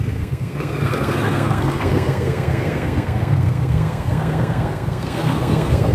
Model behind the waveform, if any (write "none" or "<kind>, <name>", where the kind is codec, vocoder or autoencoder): codec, SNAC